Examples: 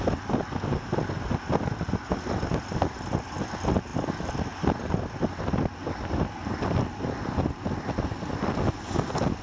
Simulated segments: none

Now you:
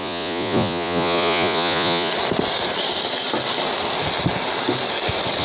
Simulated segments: 0.0-2.1 (vocoder, Vocos)

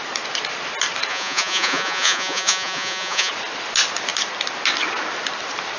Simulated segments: 1.1-3.3 (vocoder, Vocos)